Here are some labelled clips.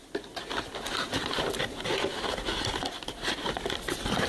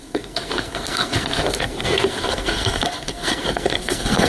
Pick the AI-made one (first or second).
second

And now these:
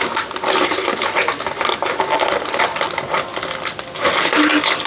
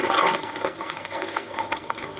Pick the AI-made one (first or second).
second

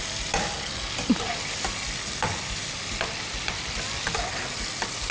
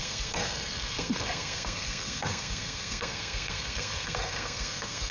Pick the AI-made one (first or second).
second